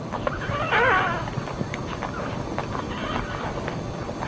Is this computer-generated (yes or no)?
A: no